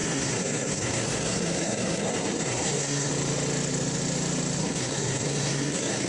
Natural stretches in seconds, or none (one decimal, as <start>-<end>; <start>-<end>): 3.1-4.6

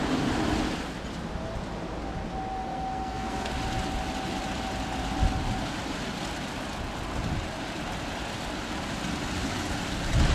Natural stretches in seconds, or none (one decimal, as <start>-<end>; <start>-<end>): 0.0-2.6; 3.5-10.3

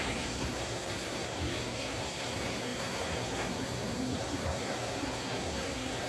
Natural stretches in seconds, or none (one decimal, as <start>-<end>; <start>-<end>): none

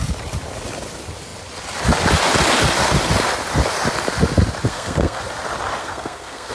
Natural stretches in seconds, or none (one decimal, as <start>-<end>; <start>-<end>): 0.0-4.7; 5.2-5.8

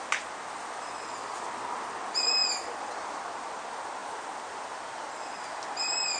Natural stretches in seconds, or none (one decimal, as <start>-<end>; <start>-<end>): 0.0-6.2

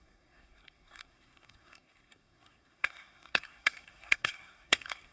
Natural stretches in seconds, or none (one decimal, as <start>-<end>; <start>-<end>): none

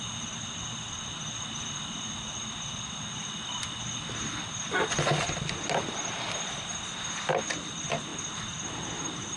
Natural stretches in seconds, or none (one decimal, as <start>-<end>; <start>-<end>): 0.0-9.4